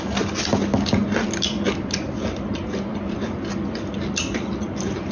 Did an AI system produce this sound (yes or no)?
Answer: no